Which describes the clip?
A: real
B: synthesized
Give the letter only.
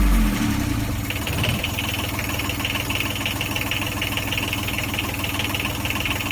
A